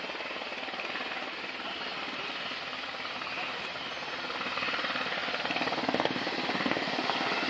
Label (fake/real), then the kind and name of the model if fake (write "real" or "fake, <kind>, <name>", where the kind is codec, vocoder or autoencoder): real